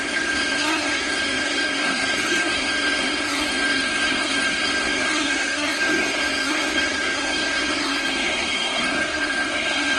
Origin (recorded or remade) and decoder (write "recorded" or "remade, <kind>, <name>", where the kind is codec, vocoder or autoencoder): remade, codec, SNAC